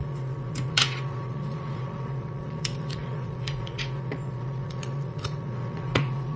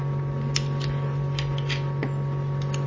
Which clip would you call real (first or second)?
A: second